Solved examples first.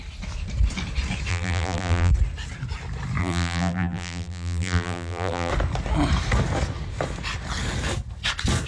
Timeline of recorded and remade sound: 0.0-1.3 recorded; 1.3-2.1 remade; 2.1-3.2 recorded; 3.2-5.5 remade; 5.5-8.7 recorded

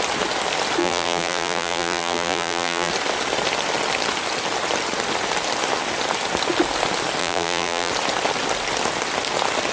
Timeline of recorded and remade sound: 0.0-0.8 recorded; 0.8-2.9 remade; 2.9-7.2 recorded; 7.2-7.9 remade; 7.9-9.7 recorded

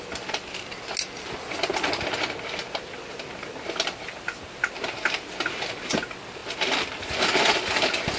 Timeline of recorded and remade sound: 0.0-8.2 recorded

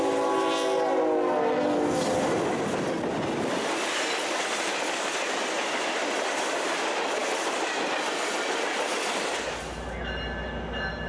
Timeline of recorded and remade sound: 0.0-11.1 recorded